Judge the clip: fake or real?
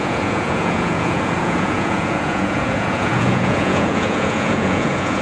fake